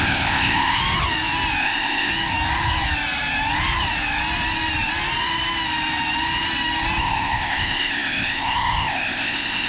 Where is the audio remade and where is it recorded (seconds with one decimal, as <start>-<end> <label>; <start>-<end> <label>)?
0.0-0.8 remade; 0.8-1.6 recorded; 1.6-2.1 remade; 2.1-7.0 recorded; 7.0-9.7 remade